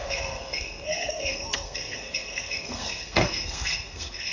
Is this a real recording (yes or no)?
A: no